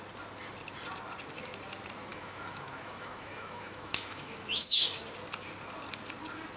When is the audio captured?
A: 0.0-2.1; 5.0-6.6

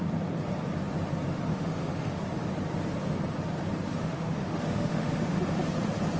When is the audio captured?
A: 0.0-1.5; 2.2-4.0; 5.4-6.2

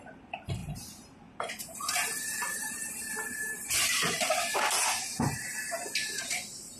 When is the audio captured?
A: 0.0-0.6; 4.6-5.5

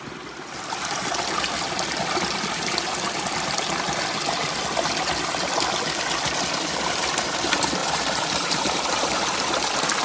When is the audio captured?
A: 0.0-7.8; 9.2-10.0

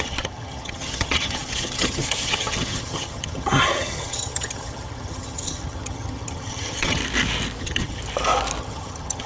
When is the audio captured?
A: 7.0-7.6; 8.0-8.6

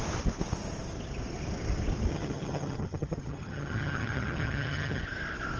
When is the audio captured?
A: 0.0-2.1; 5.0-5.6

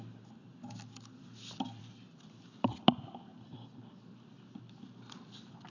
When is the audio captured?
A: 0.0-5.7